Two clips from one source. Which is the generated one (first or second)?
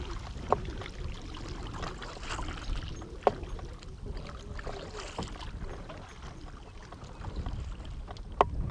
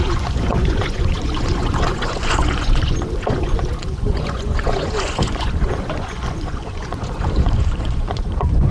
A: second